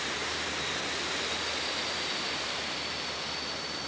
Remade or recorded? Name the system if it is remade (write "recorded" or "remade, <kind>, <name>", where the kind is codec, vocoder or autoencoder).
recorded